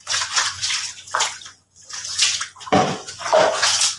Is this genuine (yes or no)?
no